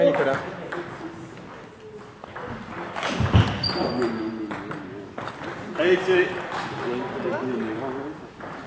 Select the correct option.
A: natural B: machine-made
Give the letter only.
A